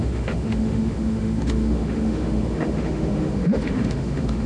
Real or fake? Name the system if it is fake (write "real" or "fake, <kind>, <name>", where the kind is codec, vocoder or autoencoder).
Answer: fake, autoencoder, DAC-VAE